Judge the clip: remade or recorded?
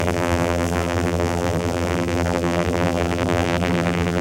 remade